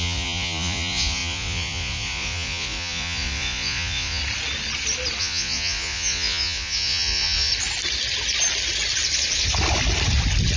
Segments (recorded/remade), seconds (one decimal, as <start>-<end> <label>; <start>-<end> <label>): 0.0-4.2 remade; 4.2-5.2 recorded; 5.2-7.5 remade; 7.5-10.6 recorded

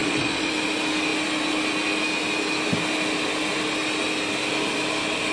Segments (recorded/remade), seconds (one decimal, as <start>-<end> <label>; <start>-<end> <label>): 0.0-0.5 remade; 0.5-5.3 recorded

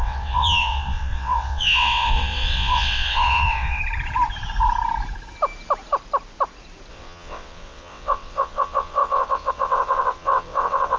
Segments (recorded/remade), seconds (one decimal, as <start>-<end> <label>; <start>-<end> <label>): 0.0-3.8 remade; 3.8-6.9 recorded; 6.9-11.0 remade

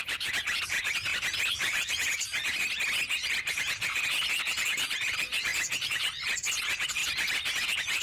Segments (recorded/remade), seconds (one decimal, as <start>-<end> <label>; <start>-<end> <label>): 0.0-2.4 remade; 2.4-3.1 recorded; 3.1-8.0 remade

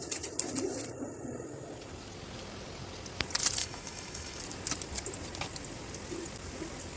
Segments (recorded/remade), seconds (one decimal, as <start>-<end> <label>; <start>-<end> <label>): 0.0-3.6 recorded; 3.6-4.4 remade; 4.4-7.0 recorded